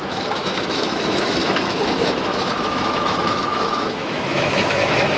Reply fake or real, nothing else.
fake